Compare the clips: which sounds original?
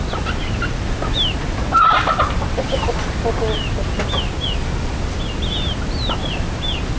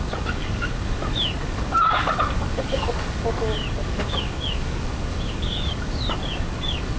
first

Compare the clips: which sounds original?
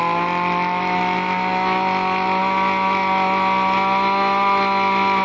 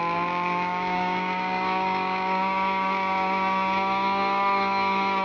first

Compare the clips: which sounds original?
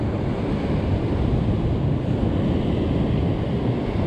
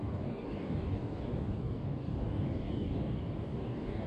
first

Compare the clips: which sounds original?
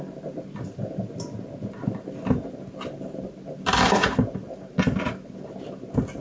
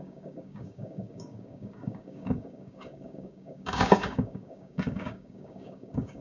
first